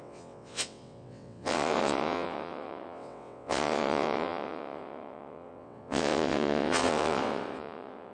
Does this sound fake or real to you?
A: fake